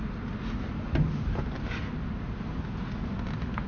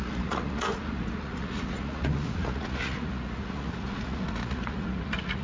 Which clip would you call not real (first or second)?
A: second